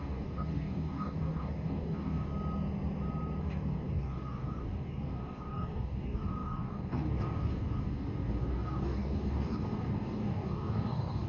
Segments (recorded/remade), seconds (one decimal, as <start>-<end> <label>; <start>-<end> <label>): 0.0-2.3 remade; 2.3-3.4 recorded; 3.4-11.3 remade